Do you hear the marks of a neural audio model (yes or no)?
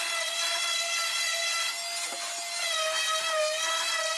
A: no